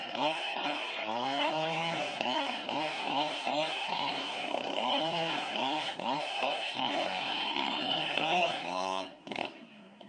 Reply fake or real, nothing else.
fake